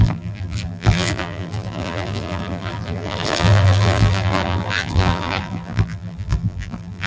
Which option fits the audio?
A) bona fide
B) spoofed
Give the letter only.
B